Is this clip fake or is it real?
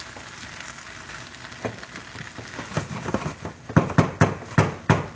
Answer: real